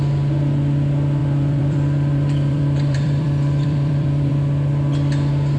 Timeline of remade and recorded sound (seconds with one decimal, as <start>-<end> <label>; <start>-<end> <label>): 0.0-1.2 recorded; 1.2-4.3 remade; 4.3-5.6 recorded